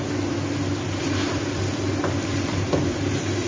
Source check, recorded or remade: remade